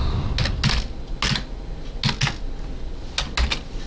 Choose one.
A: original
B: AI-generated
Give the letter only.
A